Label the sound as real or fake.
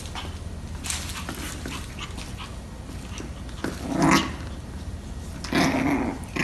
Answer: real